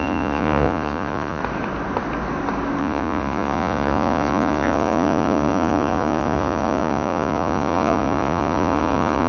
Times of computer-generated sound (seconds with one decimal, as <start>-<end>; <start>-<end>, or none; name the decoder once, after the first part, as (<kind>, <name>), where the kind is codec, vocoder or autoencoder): 0.0-1.4 (vocoder, Vocos); 2.8-9.3